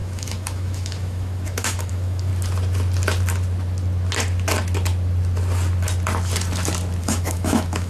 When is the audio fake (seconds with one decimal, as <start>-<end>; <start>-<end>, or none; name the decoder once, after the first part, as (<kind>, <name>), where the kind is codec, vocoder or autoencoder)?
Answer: 0.0-2.3 (autoencoder, DAC-VAE); 7.0-7.9